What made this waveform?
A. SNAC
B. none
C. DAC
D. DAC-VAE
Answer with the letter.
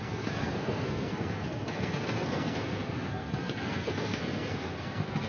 A